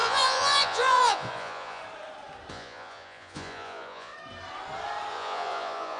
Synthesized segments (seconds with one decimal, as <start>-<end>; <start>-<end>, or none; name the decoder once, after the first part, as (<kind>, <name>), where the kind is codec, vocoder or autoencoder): 0.0-1.8 (vocoder, Vocos); 2.5-4.1; 5.1-6.0

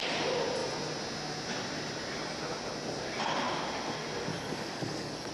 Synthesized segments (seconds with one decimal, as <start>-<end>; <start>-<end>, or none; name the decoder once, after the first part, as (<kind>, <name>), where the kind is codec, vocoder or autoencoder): 4.3-5.3 (codec, DAC)

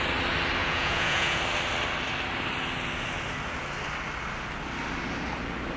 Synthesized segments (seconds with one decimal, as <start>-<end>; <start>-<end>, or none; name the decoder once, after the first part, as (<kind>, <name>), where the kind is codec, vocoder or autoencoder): 0.6-1.4 (vocoder, Vocos)

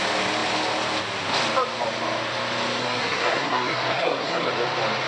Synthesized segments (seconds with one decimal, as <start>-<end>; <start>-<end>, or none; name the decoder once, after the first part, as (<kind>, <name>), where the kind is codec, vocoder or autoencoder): 2.8-4.5 (codec, SNAC)

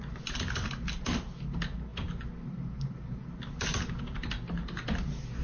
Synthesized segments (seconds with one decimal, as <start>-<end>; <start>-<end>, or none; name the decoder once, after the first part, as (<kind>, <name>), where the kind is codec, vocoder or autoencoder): none